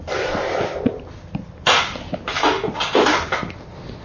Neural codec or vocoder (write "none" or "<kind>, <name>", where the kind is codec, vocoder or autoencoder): none